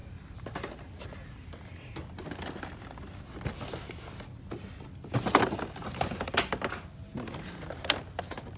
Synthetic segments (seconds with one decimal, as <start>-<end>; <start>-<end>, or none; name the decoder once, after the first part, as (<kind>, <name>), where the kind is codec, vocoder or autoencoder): none